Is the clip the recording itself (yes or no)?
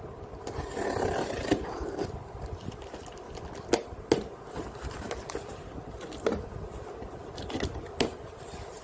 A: yes